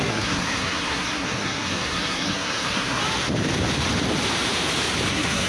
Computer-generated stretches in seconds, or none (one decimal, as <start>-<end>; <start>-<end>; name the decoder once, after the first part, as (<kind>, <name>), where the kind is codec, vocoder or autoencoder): 0.0-3.0 (codec, SNAC); 5.1-5.5